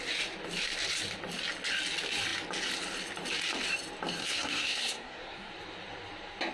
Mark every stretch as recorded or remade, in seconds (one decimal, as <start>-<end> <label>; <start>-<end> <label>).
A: 0.0-4.2 recorded; 4.2-5.5 remade; 5.5-6.5 recorded

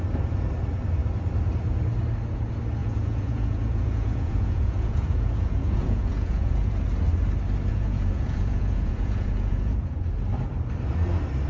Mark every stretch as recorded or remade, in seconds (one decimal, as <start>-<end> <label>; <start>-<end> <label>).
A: 0.0-2.8 recorded; 2.8-6.7 remade; 6.7-7.7 recorded; 7.7-10.0 remade; 10.0-11.5 recorded